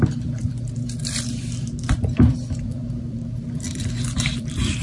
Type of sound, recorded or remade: remade